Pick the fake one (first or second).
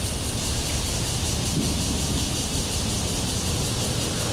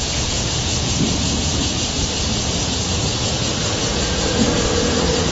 second